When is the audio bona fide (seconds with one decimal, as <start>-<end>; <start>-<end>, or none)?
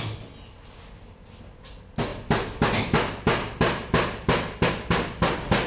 0.0-5.7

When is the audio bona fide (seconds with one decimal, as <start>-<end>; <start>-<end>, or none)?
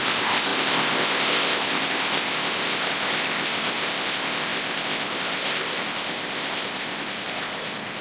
none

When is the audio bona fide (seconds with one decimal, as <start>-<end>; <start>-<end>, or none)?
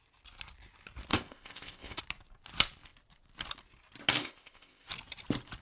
0.0-1.1; 2.0-4.2; 4.9-5.6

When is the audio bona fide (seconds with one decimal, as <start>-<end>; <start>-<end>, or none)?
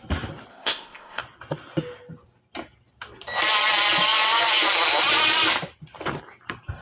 0.0-0.5; 1.2-6.8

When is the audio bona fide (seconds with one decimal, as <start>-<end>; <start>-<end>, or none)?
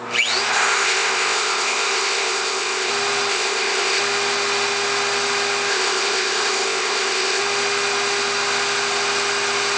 0.0-0.5; 2.9-3.3; 4.0-5.7; 7.4-9.8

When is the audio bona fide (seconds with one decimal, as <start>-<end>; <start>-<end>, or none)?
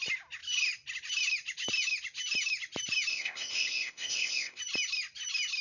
0.0-3.1; 4.6-5.6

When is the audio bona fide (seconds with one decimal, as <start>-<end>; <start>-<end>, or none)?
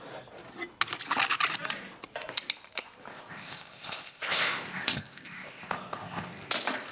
0.0-3.1; 6.5-6.9